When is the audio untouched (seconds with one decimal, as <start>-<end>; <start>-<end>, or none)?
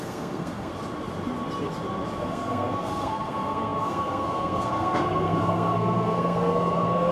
0.7-2.2